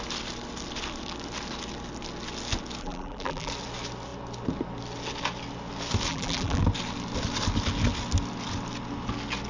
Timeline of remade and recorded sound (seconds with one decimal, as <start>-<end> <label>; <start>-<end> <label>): 0.0-2.8 recorded; 2.8-3.5 remade; 3.5-6.1 recorded; 6.1-6.6 remade; 6.6-9.5 recorded